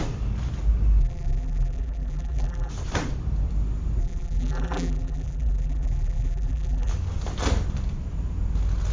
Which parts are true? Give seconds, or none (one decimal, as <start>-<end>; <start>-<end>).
0.0-1.0; 2.7-4.0; 6.9-8.9